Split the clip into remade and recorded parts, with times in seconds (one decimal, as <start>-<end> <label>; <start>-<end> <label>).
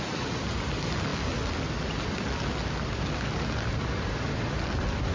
0.0-5.1 recorded